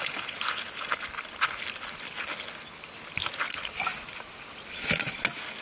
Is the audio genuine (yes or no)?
yes